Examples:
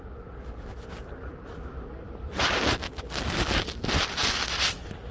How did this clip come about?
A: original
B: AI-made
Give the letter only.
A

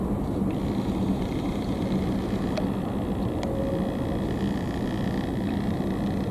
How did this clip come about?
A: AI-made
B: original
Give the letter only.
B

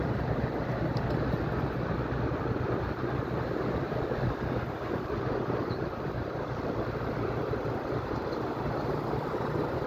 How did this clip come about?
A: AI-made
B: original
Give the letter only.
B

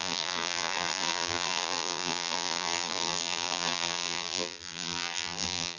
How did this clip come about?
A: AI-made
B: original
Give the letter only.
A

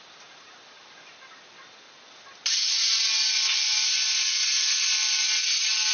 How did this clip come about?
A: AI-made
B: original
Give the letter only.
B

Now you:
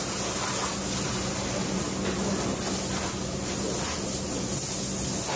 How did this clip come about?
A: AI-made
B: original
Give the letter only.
B